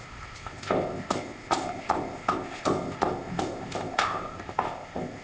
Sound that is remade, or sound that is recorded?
remade